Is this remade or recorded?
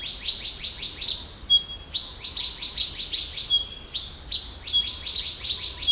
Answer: recorded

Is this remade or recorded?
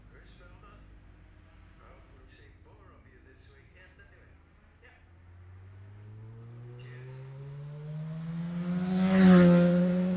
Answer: recorded